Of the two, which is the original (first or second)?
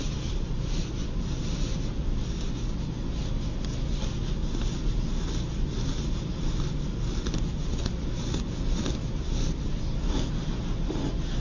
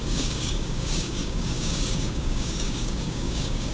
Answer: first